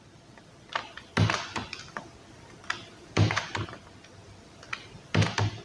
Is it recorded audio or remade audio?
recorded